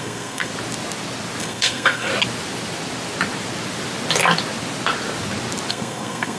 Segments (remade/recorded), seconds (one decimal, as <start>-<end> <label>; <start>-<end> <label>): 0.0-0.5 remade; 0.5-1.4 recorded; 1.4-2.1 remade; 2.1-5.7 recorded; 5.7-6.4 remade